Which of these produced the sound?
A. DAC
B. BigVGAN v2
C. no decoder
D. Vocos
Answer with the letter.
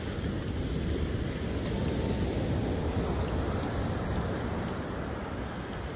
C